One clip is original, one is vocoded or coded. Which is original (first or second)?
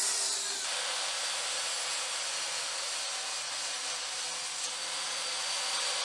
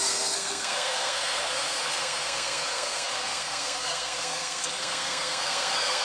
first